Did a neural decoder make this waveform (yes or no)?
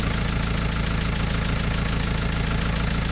no